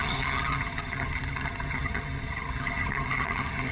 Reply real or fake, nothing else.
fake